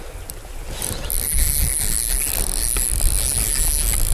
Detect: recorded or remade recorded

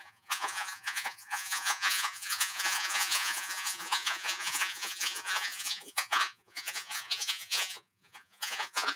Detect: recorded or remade remade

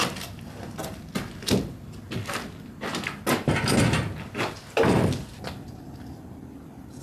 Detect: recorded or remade recorded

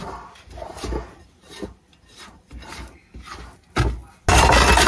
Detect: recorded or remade recorded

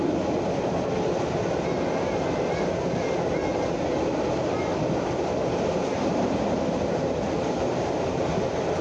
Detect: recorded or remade recorded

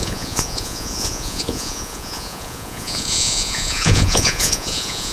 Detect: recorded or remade remade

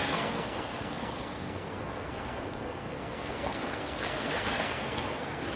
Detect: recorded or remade remade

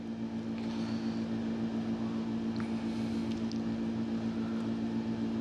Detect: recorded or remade recorded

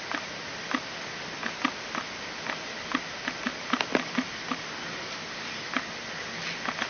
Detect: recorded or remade recorded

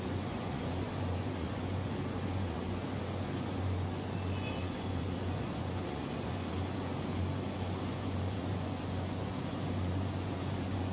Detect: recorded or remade remade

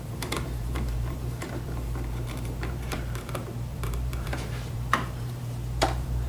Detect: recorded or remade remade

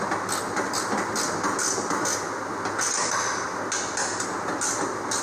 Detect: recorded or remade recorded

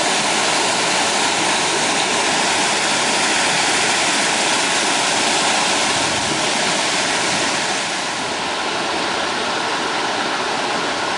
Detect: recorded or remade recorded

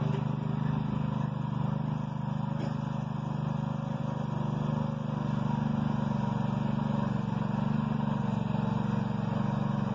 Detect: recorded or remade recorded